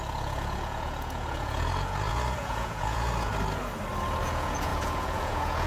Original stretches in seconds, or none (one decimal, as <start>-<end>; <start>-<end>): 3.3-4.2